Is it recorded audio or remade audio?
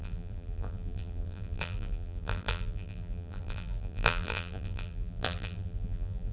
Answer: remade